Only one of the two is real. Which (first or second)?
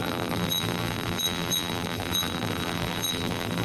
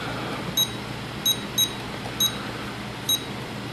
second